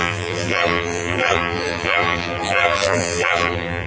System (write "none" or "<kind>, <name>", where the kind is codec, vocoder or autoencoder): vocoder, BigVGAN v2